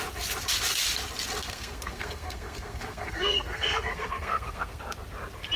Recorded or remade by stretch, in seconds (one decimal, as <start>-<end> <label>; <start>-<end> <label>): 0.0-1.4 recorded; 1.4-4.8 remade; 4.8-5.6 recorded